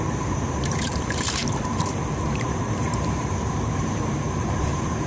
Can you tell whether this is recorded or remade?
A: remade